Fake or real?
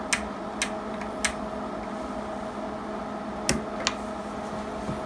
real